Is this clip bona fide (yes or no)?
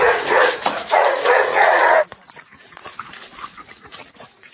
no